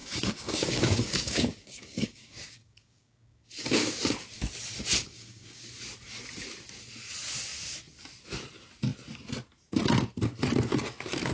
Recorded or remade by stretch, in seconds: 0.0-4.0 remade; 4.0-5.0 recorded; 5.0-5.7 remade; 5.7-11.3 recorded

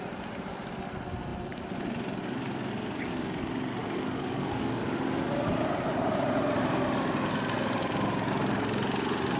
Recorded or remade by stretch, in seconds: 0.0-3.8 recorded; 3.8-4.8 remade; 4.8-9.4 recorded

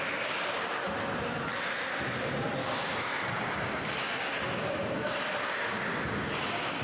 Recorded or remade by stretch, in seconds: 0.0-2.6 recorded; 2.6-6.8 remade

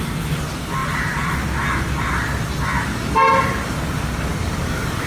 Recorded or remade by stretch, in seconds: 0.0-4.3 recorded; 4.3-5.1 remade